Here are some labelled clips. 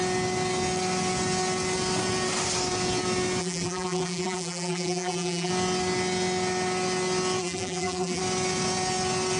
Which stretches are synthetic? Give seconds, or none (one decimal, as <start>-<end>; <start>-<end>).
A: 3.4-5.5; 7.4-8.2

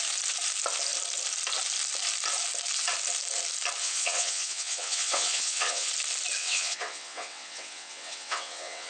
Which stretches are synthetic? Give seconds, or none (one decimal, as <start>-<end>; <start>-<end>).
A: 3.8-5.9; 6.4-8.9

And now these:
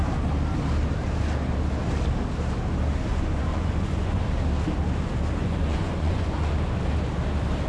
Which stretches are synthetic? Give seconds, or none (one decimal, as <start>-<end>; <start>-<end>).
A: 3.1-4.2; 5.4-6.5